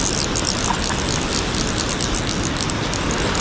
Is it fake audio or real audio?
real